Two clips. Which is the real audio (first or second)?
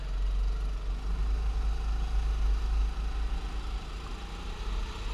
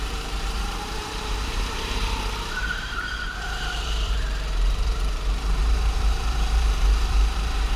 first